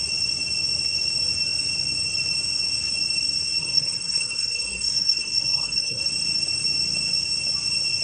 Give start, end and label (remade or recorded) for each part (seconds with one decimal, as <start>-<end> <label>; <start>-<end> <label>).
0.0-3.6 recorded; 3.6-6.0 remade; 6.0-8.0 recorded